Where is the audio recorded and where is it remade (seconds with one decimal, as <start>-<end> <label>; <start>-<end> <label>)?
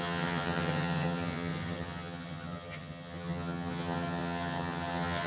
0.0-5.3 remade